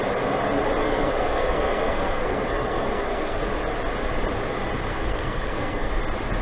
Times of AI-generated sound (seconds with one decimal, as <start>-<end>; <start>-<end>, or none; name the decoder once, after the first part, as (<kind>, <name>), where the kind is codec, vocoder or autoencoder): 0.8-3.4 (codec, SNAC); 4.9-5.9